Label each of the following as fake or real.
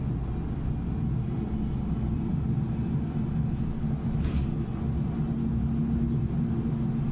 real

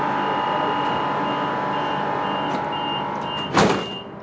real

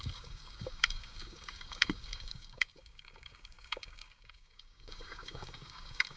fake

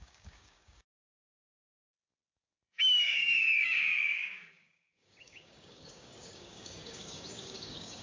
fake